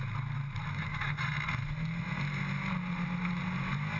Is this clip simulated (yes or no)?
no